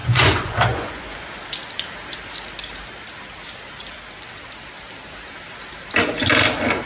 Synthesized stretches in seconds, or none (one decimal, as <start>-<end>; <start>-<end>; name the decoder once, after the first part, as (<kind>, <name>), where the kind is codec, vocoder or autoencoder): 0.0-1.3 (vocoder, Vocos)